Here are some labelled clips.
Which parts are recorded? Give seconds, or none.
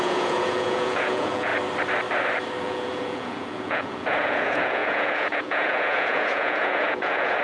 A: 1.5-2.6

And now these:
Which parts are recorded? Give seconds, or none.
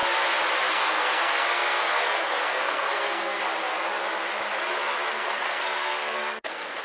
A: 0.0-0.7; 3.4-5.1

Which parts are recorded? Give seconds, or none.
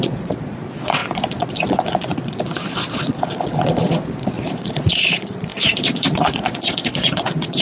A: none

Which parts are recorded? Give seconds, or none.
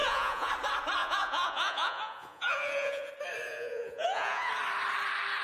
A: 0.5-1.0; 3.1-3.5; 4.5-5.4